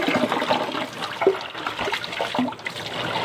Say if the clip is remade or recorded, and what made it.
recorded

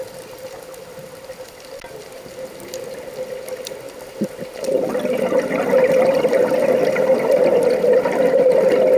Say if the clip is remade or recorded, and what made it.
recorded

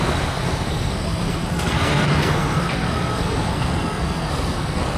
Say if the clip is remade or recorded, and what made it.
remade, codec, SNAC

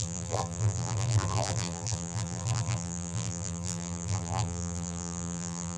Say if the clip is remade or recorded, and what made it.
remade, vocoder, BigVGAN v2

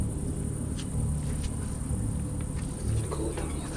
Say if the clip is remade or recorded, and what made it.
recorded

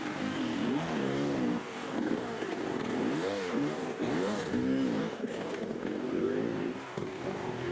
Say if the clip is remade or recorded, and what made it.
remade, codec, DAC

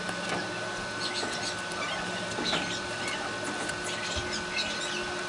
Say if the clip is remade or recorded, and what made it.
recorded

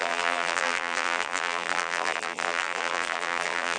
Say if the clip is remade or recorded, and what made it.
remade, vocoder, BigVGAN v2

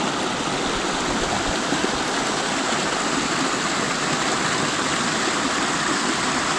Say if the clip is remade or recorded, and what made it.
recorded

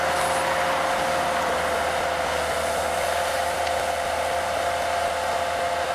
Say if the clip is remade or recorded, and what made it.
recorded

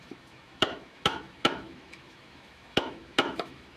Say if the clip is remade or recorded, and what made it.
remade, autoencoder, DAC-VAE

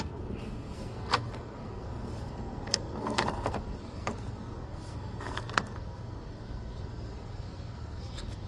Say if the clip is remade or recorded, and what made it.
remade, codec, SNAC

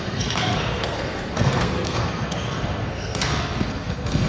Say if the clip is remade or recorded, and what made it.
remade, codec, SNAC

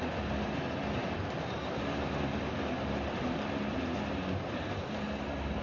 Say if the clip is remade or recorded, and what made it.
recorded